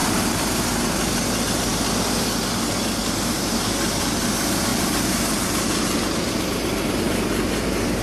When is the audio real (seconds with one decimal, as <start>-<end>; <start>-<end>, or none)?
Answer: 0.6-3.0; 4.3-4.7; 6.9-8.0

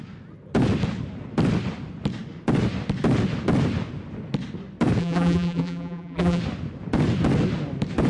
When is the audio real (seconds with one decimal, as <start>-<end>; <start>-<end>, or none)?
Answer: 0.0-5.0; 6.4-8.1

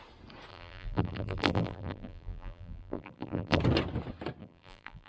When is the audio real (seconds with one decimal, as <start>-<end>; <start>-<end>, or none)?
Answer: 0.0-0.5; 3.6-4.4

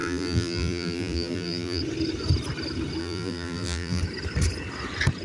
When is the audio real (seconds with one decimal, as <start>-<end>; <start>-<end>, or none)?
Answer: 1.8-3.0; 4.0-5.2